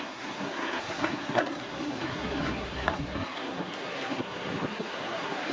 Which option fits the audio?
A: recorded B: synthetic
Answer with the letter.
B